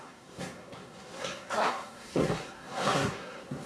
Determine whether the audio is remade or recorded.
remade